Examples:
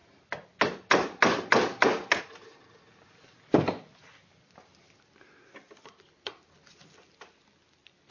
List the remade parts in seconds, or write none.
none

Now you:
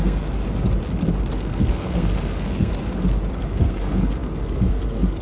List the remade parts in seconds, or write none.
0.0-0.4 (codec, SNAC); 1.3-2.7; 3.3-5.2

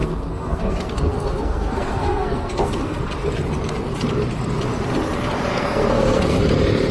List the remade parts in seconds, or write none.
0.0-3.0 (codec, SNAC); 5.5-6.4

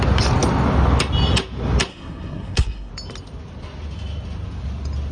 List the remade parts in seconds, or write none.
1.9-2.9 (codec, SNAC)

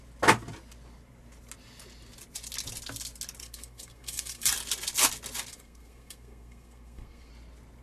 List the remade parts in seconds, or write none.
3.4-4.5 (codec, SNAC); 5.5-7.3

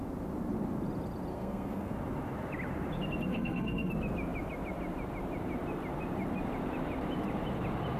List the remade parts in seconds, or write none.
1.3-1.9 (codec, SNAC); 3.3-3.9

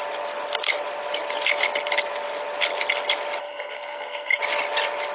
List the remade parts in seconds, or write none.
3.4-4.4 (codec, SNAC)

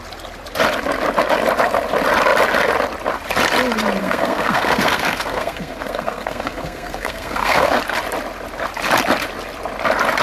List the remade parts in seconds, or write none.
4.0-7.8 (codec, SNAC)